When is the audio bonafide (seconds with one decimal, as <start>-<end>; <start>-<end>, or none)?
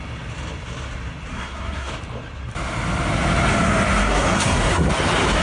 0.0-1.3; 1.9-4.0; 4.9-5.4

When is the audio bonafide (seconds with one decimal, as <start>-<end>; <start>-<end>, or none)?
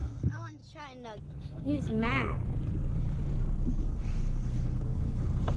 0.6-1.2; 2.4-3.8